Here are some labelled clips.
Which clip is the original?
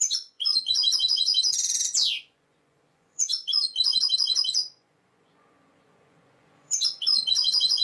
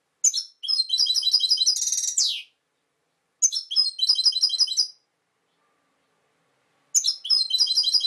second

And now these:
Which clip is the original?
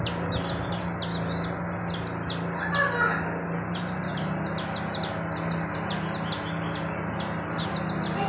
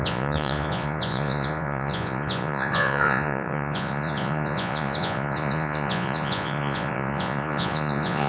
first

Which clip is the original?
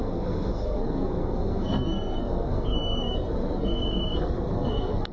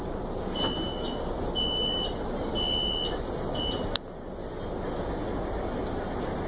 second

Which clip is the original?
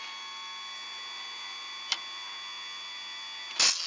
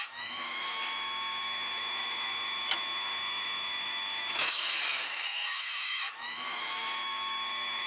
first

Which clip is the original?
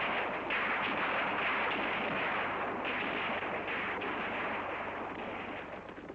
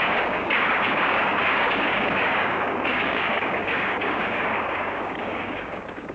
first